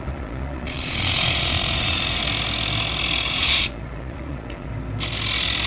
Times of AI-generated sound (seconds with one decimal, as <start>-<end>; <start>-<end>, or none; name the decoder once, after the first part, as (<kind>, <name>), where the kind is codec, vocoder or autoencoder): 0.0-2.2 (vocoder, Vocos); 3.3-4.7